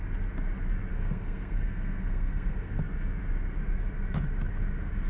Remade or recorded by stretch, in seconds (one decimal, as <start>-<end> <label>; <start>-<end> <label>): 0.0-0.9 recorded; 0.9-2.8 remade; 2.8-5.1 recorded